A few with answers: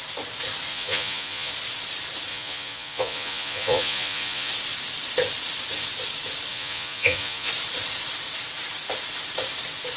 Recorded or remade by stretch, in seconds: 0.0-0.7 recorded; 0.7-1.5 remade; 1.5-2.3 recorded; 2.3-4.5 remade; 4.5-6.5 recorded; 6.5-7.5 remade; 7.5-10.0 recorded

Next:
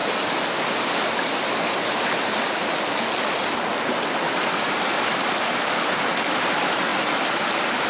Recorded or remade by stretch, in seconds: 0.0-7.9 recorded

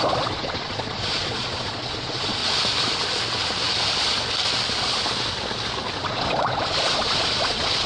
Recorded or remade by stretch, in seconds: 0.0-2.4 remade; 2.4-6.0 recorded; 6.0-7.9 remade

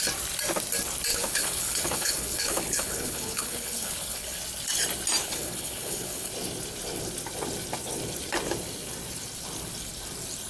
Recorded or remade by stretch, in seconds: 0.0-1.1 recorded; 1.1-4.4 remade; 4.4-5.2 recorded; 5.2-6.3 remade; 6.3-10.5 recorded